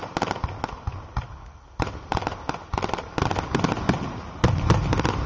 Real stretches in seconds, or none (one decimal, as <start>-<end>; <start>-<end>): 0.0-5.3